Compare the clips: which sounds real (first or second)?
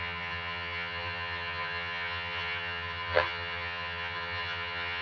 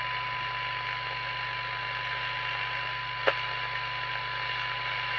second